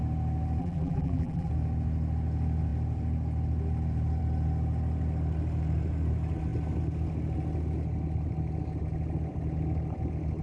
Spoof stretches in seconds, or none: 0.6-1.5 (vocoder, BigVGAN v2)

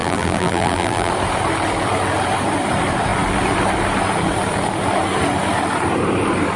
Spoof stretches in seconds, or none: 0.0-1.1 (vocoder, BigVGAN v2)